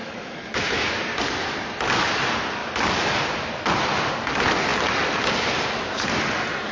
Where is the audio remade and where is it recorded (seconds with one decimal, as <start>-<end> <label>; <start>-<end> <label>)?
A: 0.0-0.9 remade; 0.9-6.7 recorded